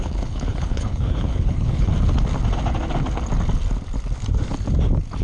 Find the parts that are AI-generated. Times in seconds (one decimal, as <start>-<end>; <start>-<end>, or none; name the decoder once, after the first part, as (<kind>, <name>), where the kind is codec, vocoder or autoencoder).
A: 0.0-1.9 (codec, HILCodec)